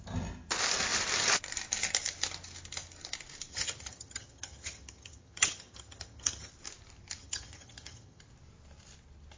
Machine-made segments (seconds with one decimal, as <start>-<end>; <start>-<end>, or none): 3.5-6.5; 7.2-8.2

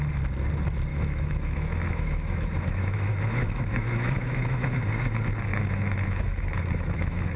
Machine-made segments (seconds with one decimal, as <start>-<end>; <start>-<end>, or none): 0.9-4.8; 5.5-7.4

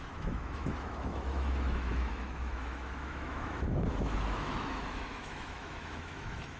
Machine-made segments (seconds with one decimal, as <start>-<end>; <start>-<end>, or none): 0.0-6.6